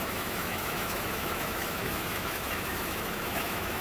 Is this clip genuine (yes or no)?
no